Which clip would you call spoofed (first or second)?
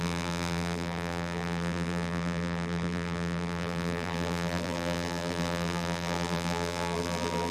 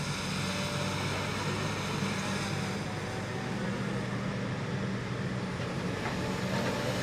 first